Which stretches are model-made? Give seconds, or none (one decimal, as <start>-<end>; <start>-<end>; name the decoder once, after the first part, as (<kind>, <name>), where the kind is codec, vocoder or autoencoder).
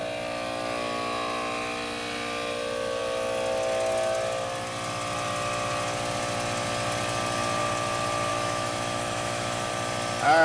8.3-9.7 (autoencoder, DAC-VAE)